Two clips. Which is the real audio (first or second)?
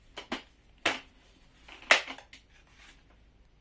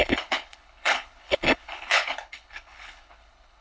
first